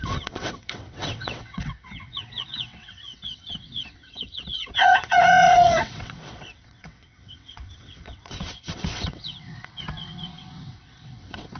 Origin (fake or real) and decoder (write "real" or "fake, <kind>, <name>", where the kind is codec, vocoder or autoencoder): fake, vocoder, WaveNeXt